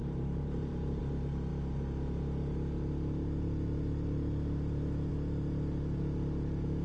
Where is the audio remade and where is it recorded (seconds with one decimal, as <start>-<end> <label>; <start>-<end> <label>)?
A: 0.0-1.0 remade; 1.0-6.8 recorded